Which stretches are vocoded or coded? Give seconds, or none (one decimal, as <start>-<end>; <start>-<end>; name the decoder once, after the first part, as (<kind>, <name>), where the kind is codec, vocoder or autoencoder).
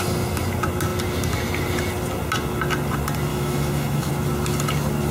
3.3-4.1 (autoencoder, DAC-VAE)